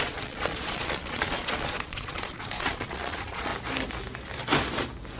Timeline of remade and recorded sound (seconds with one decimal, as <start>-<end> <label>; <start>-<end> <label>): 0.0-3.5 remade; 3.5-5.2 recorded